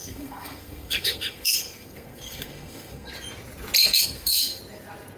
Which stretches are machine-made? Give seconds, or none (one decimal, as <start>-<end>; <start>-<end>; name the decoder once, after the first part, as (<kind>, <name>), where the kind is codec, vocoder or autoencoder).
0.0-3.1 (codec, SNAC); 3.8-4.6